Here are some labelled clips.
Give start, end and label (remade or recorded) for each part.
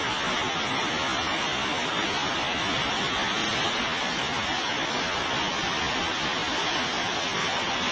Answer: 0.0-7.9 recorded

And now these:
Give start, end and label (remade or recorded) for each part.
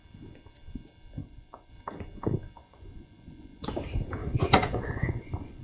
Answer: 0.0-1.2 recorded; 1.2-1.7 remade; 1.7-2.6 recorded; 2.6-3.6 remade; 3.6-4.2 recorded; 4.2-5.6 remade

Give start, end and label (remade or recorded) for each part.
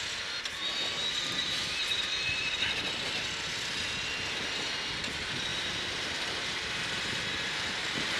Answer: 0.0-5.5 recorded; 5.5-6.7 remade; 6.7-8.2 recorded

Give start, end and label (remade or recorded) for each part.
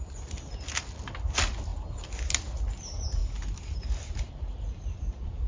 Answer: 0.0-5.5 recorded